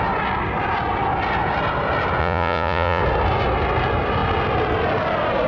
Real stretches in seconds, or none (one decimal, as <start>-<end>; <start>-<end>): 0.0-2.2; 3.0-5.5